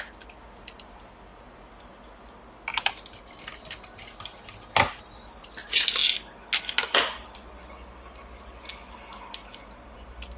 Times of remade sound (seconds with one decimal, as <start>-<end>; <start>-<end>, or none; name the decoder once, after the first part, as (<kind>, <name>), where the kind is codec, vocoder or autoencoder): none